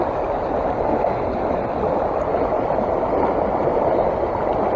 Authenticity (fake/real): real